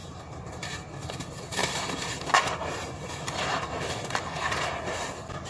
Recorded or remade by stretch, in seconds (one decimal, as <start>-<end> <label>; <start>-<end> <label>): 0.0-0.7 remade; 0.7-1.6 recorded; 1.6-3.2 remade; 3.2-5.5 recorded